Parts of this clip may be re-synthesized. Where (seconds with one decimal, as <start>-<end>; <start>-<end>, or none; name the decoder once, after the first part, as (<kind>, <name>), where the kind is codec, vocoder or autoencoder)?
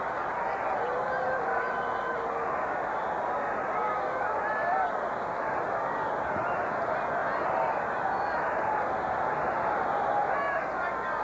7.2-7.7 (vocoder, BigVGAN v2)